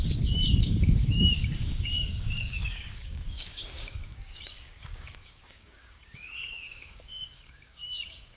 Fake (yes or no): yes